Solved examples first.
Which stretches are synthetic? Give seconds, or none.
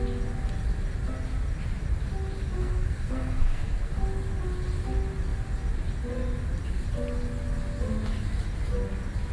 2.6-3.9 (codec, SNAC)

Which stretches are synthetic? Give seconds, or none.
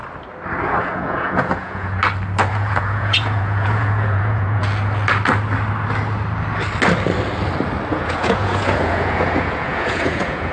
0.8-2.0 (vocoder, Vocos); 2.5-4.6; 7.9-10.5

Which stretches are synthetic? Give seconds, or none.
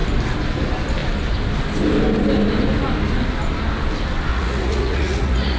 4.3-5.6 (vocoder, Vocos)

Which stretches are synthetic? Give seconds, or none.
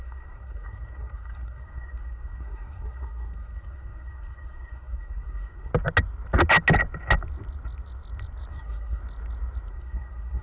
0.0-5.7 (codec, SNAC); 8.5-9.0; 9.7-10.4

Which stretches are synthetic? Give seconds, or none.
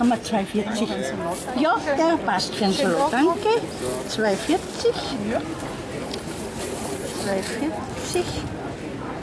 none